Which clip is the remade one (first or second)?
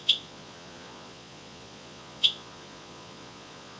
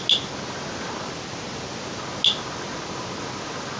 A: first